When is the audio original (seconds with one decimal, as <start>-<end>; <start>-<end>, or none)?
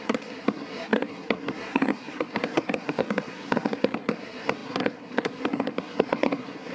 none